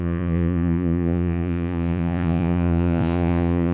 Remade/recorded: remade